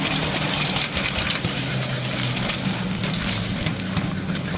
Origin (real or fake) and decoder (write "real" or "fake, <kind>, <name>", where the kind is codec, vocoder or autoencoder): real